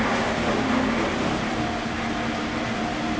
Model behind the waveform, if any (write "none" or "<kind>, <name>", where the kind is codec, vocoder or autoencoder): none